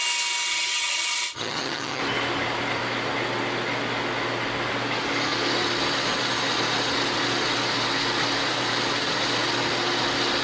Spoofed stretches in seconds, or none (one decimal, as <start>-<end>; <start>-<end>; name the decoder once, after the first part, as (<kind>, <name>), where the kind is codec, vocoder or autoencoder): 0.5-2.0 (vocoder, HiFi-GAN)